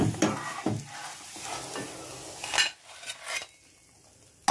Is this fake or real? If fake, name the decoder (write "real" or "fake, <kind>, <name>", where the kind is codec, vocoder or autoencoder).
real